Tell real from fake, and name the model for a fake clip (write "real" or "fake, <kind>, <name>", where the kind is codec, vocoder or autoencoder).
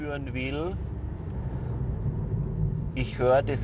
real